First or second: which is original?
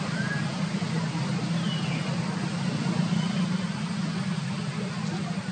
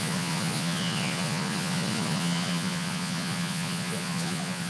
first